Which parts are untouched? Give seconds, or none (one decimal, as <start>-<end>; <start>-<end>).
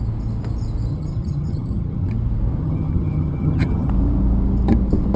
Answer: 0.0-0.9; 2.1-2.6; 3.9-5.2